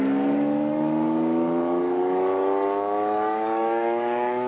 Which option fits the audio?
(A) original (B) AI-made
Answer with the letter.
B